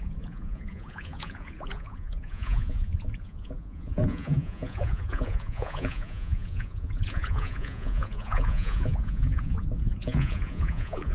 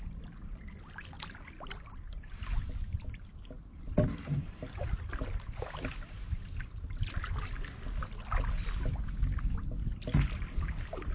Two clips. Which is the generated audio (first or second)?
first